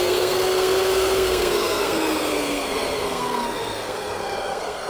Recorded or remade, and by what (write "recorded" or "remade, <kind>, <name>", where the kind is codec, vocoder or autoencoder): remade, codec, SNAC